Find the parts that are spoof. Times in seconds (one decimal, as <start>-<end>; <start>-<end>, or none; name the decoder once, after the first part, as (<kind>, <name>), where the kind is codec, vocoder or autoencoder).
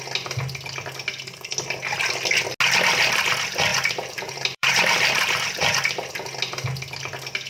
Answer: 3.7-6.1 (vocoder, BigVGAN v2)